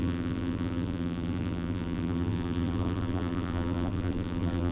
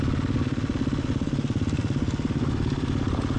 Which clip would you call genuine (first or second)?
second